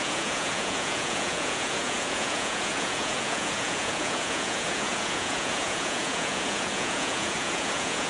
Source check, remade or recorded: remade